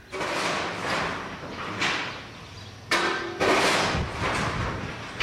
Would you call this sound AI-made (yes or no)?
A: no